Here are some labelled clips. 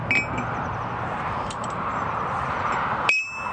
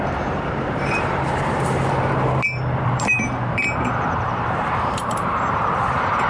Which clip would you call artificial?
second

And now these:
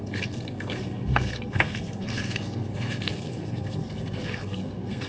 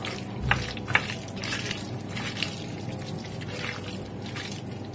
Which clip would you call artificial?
first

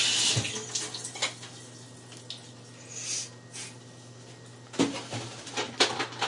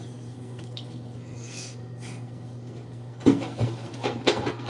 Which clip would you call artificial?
second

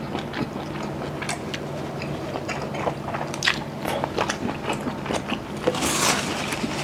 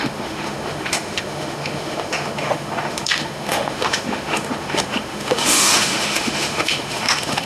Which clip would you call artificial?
second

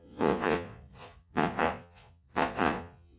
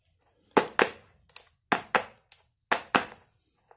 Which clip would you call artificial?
first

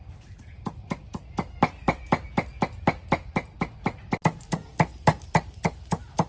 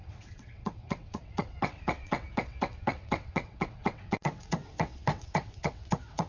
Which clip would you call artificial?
second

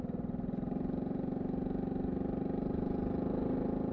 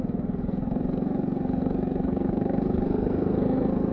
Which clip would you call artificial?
second